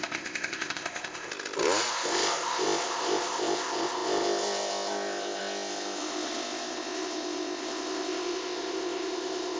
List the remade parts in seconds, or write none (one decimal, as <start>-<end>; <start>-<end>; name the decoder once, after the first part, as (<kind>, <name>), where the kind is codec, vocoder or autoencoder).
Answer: 0.0-1.3 (codec, ZipCodec); 1.9-9.6